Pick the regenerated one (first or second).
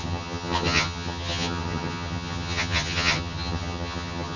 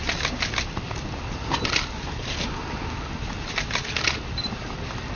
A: first